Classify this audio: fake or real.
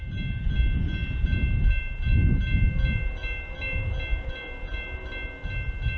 real